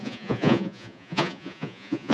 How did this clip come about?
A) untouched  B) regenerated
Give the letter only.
B